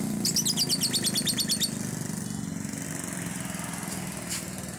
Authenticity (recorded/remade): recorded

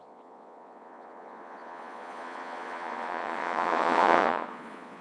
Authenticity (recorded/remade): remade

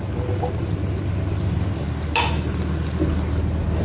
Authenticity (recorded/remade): recorded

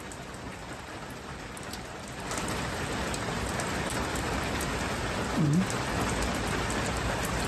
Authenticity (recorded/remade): recorded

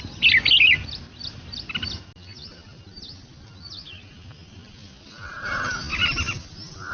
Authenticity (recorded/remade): recorded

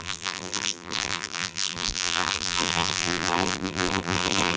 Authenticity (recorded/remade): remade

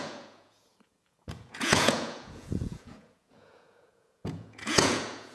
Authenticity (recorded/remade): remade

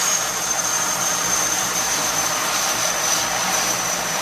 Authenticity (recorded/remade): remade